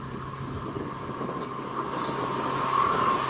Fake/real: real